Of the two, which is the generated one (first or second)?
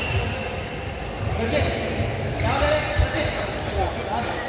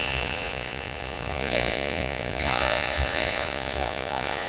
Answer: second